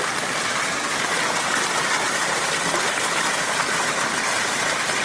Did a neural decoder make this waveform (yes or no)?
no